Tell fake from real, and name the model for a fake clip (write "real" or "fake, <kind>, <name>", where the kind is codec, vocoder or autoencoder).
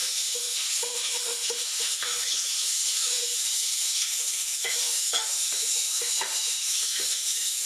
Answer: fake, autoencoder, DAC-VAE